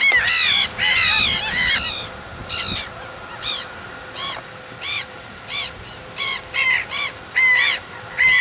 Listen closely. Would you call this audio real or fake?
real